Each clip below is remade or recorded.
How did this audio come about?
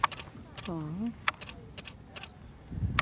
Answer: recorded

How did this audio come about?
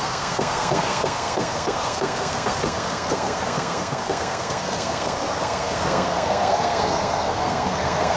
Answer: remade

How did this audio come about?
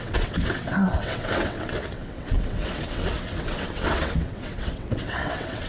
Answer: remade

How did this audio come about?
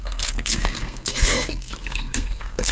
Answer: remade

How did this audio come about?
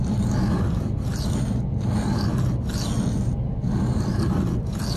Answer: recorded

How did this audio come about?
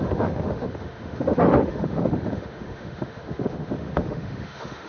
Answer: remade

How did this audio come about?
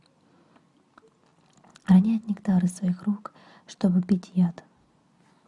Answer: recorded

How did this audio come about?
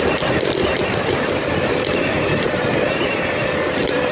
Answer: remade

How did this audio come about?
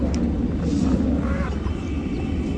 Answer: recorded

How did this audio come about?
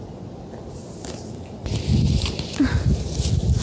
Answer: recorded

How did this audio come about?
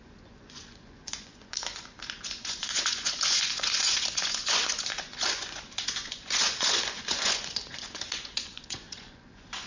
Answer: remade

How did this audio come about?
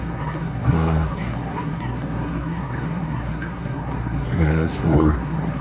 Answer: remade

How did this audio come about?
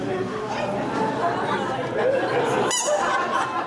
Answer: recorded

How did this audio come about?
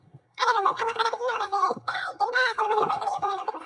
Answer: remade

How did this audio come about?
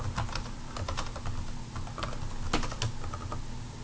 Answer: recorded